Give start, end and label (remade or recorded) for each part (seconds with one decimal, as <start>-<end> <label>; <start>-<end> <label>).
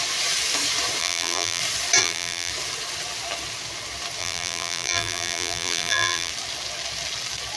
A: 0.0-1.0 recorded; 1.0-1.6 remade; 1.6-2.0 recorded; 2.0-2.5 remade; 2.5-4.2 recorded; 4.2-6.3 remade; 6.3-7.6 recorded